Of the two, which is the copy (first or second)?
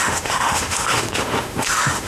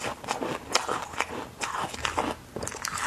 first